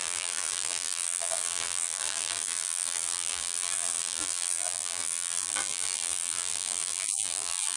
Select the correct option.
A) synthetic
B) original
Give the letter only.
A